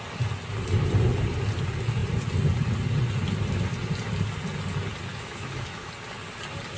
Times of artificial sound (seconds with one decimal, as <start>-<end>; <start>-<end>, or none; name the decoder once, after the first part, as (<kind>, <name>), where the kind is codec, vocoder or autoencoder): 5.1-5.9 (autoencoder, DAC-VAE)